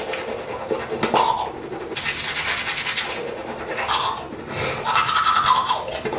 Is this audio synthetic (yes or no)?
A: no